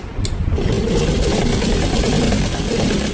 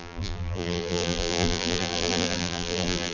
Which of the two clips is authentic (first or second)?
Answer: first